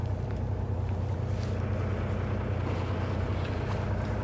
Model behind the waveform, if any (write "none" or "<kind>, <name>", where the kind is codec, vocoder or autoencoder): none